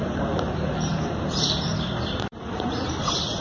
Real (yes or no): no